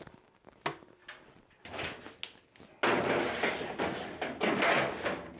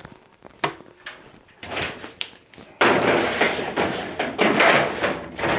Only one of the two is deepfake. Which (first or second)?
second